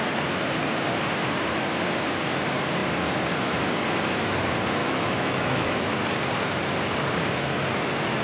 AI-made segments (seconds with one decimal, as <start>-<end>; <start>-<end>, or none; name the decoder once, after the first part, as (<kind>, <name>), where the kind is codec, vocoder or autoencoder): 4.8-5.9 (autoencoder, DAC-VAE)